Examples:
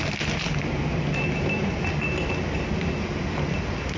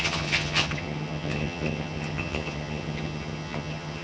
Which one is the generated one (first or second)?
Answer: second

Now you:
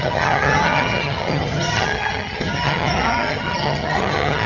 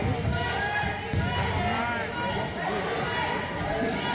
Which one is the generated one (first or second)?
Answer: first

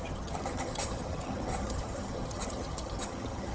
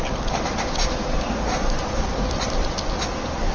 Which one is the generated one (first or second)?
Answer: first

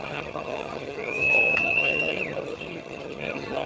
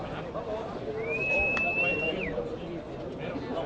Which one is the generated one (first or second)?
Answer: first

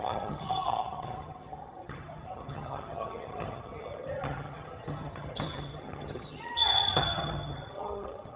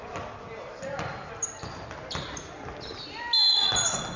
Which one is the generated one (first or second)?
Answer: first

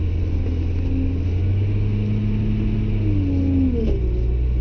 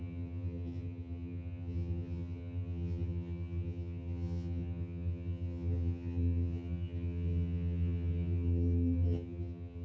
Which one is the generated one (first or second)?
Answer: second